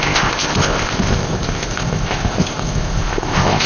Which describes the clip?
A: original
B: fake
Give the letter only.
B